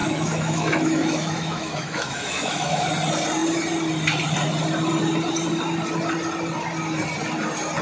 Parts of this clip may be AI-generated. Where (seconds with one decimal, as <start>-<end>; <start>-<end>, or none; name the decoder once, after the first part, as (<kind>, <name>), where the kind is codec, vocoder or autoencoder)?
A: 0.0-2.8 (autoencoder, DAC-VAE)